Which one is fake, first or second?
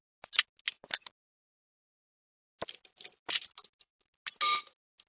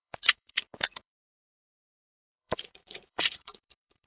second